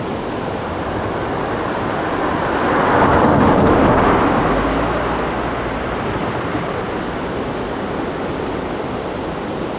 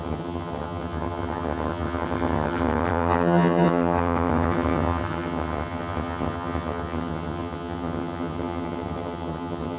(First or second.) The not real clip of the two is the second